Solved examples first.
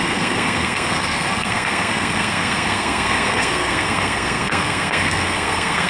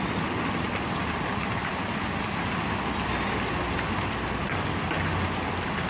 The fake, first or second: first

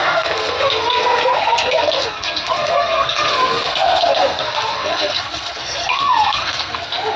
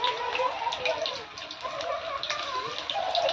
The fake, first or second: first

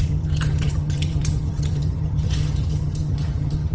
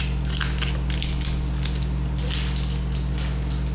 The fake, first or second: first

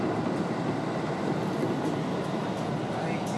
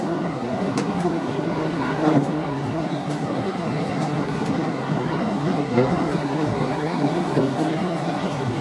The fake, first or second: second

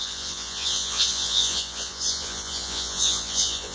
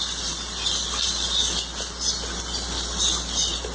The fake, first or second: first